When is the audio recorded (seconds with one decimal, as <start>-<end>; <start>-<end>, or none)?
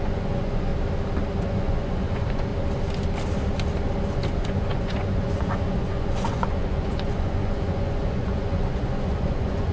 0.7-1.4; 2.5-4.3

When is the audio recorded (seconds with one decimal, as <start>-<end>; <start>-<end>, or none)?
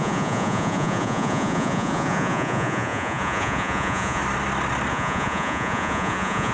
4.2-4.9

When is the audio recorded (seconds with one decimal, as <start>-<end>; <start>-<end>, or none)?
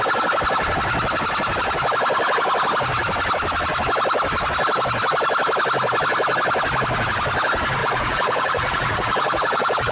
0.0-7.8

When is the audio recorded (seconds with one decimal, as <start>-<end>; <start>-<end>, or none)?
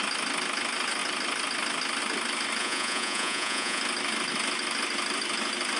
0.0-2.6; 3.8-5.8